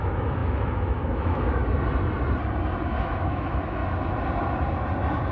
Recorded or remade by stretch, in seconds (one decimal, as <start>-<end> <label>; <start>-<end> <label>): 0.0-1.6 remade; 1.6-3.0 recorded; 3.0-3.8 remade; 3.8-5.3 recorded